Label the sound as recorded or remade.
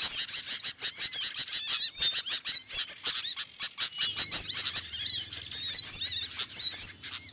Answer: recorded